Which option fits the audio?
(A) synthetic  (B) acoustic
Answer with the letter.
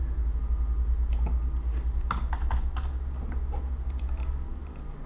B